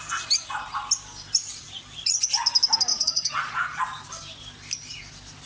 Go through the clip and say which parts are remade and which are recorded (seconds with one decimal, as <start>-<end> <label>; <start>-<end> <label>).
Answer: 0.0-2.9 recorded; 2.9-3.8 remade; 3.8-5.5 recorded